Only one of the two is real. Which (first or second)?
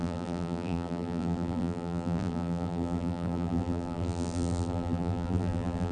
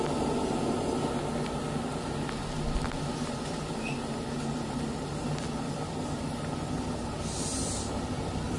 second